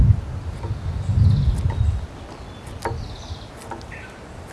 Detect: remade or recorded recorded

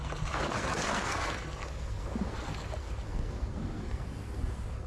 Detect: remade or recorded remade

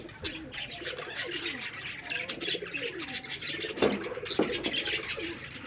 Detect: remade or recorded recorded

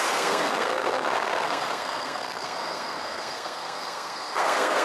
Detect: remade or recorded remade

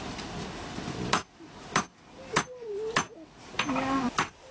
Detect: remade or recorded remade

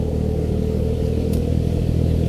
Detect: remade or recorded remade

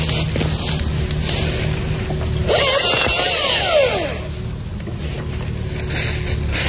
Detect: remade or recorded recorded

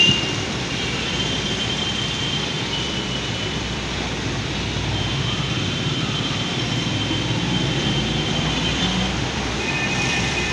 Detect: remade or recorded remade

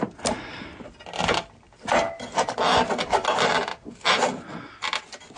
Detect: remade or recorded recorded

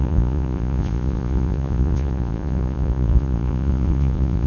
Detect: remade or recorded remade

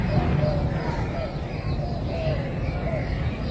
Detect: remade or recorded recorded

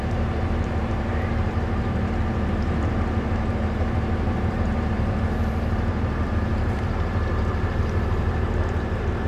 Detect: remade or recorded remade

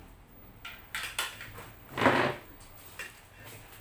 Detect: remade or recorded recorded